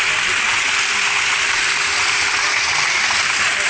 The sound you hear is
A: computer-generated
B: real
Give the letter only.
B